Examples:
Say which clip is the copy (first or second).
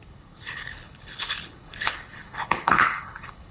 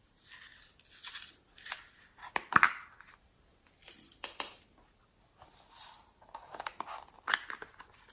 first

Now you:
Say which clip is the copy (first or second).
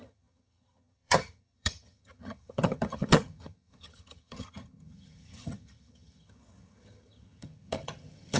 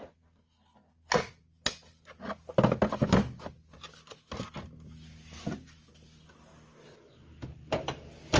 first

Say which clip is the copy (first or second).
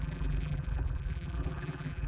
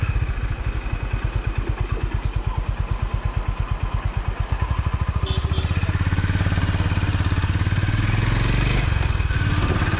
first